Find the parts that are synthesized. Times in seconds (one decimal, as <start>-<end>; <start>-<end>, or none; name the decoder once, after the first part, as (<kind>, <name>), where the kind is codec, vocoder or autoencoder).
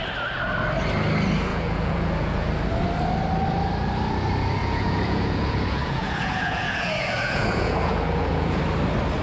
1.5-2.5 (vocoder, Vocos); 4.6-8.6